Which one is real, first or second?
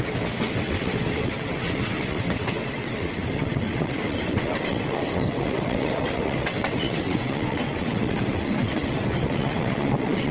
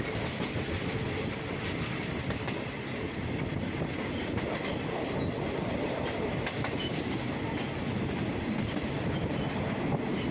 second